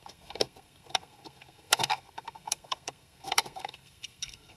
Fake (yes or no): yes